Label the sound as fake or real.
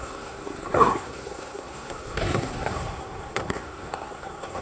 fake